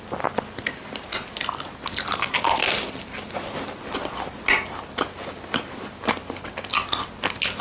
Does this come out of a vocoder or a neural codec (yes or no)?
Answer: no